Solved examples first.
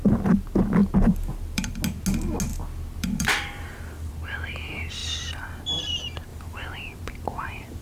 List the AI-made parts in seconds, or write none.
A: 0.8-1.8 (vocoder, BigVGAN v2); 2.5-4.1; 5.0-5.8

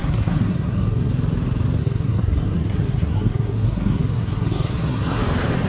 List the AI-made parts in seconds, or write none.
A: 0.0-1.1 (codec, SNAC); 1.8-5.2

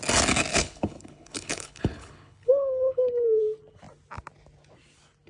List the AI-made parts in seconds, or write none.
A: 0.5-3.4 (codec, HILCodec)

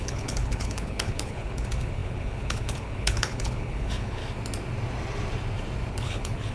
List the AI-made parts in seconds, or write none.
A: 0.0-4.2 (codec, HILCodec); 5.9-6.5